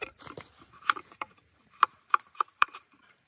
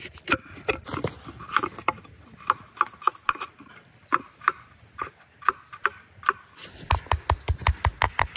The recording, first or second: second